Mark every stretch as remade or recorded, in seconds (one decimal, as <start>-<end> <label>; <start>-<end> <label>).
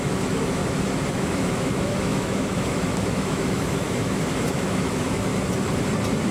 0.0-0.6 remade; 0.6-1.1 recorded; 1.1-5.3 remade; 5.3-6.3 recorded